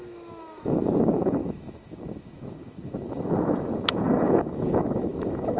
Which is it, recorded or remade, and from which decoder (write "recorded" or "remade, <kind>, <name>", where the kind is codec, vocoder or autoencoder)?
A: remade, autoencoder, DAC-VAE